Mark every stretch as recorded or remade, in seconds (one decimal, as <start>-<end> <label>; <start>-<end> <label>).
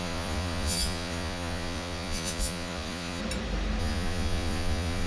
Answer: 0.0-3.2 remade; 3.2-3.8 recorded; 3.8-5.1 remade